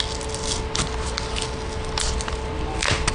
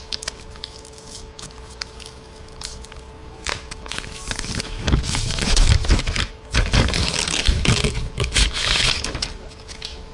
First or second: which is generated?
second